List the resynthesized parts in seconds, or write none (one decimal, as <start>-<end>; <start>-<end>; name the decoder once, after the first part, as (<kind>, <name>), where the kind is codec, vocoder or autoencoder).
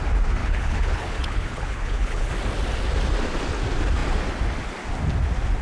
0.4-2.3 (codec, HILCodec)